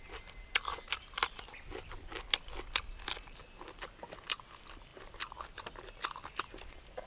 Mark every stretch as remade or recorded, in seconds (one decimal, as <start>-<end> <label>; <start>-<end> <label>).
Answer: 0.0-7.1 recorded